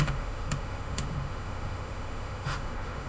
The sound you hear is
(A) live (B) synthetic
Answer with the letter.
B